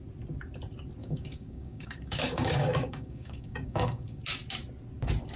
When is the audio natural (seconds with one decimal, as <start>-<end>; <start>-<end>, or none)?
0.0-1.0; 4.2-5.4